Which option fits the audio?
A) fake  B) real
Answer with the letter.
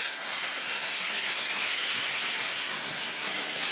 A